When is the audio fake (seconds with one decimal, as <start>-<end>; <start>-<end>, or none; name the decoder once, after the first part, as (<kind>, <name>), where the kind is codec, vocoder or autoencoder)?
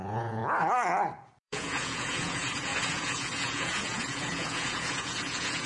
0.0-0.4 (vocoder, Vocos); 1.4-5.7